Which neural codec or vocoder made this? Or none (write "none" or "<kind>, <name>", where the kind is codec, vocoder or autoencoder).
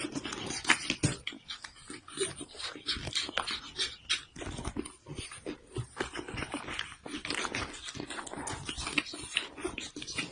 none